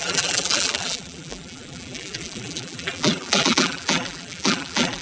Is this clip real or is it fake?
fake